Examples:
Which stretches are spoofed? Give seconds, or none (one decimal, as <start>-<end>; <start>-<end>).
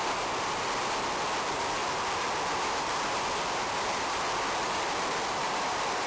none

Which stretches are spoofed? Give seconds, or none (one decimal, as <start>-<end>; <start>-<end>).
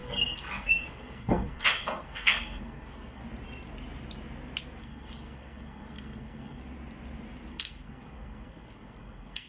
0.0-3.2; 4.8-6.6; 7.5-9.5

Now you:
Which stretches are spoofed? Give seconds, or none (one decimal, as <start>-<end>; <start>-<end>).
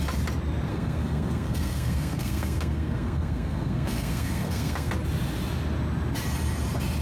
0.7-4.9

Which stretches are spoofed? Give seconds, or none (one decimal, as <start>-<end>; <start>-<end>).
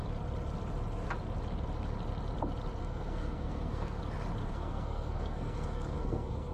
2.8-4.0; 4.4-6.5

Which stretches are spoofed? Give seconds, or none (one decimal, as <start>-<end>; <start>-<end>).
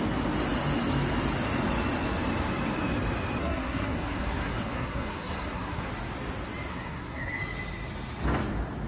3.4-5.9; 6.7-7.4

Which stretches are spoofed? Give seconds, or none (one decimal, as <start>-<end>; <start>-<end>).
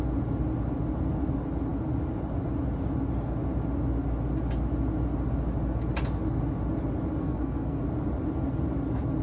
7.2-7.8